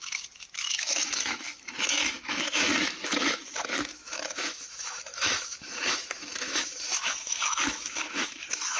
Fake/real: fake